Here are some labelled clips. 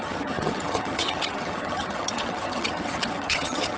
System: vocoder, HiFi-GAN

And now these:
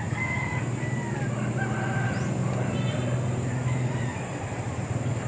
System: none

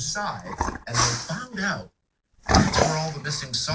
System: none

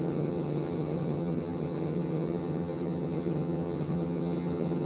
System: vocoder, HiFi-GAN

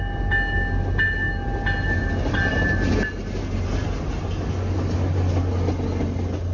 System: none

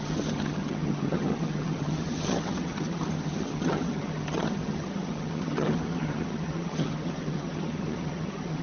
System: vocoder, HiFi-GAN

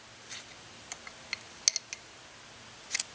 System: none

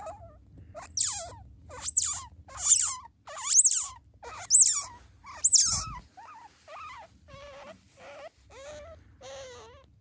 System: none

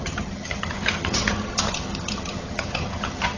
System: vocoder, HiFi-GAN